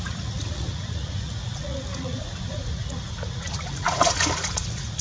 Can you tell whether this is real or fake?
fake